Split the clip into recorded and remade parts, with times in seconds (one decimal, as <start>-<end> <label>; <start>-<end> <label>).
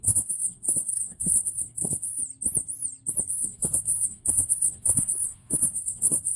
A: 0.0-2.2 remade; 2.2-3.3 recorded; 3.3-6.4 remade